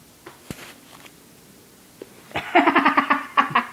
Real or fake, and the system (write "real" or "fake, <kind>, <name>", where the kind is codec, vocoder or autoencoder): real